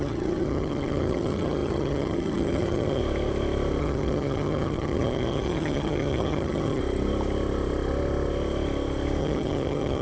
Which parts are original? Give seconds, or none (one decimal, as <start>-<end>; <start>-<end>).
3.0-3.8; 6.8-9.2